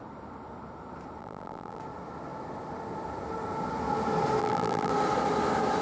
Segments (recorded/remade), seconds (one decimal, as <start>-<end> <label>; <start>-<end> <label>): 0.0-1.2 recorded; 1.2-1.8 remade; 1.8-4.4 recorded; 4.4-4.9 remade; 4.9-5.8 recorded